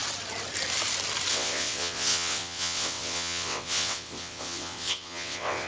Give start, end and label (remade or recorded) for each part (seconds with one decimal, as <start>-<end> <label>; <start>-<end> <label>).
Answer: 0.0-1.3 recorded; 1.3-5.7 remade